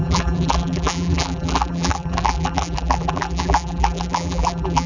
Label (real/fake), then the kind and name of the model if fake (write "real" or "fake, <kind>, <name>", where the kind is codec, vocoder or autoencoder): fake, vocoder, BigVGAN v2